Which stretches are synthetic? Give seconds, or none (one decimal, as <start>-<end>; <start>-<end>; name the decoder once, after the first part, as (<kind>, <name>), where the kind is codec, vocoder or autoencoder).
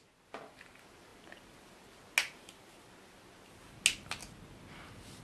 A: none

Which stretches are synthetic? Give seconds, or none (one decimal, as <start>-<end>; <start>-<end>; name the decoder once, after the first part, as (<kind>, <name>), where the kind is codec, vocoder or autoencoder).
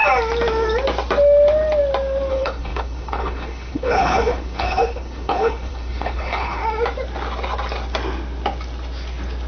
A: 2.3-6.6 (codec, HILCodec)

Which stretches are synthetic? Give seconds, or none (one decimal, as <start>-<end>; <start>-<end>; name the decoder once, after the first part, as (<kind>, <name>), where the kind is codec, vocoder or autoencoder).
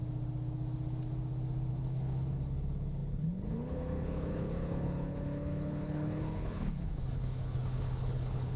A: 1.7-8.6 (codec, HILCodec)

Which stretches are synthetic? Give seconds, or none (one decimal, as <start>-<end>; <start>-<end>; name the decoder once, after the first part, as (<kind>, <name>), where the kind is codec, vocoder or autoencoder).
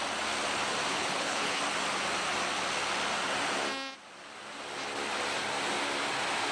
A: 0.9-1.6 (codec, HILCodec)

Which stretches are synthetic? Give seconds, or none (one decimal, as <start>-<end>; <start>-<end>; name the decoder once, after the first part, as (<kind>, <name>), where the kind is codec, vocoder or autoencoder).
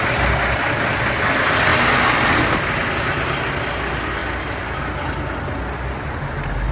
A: none